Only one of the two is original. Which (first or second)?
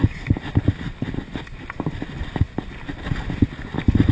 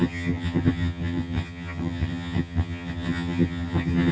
first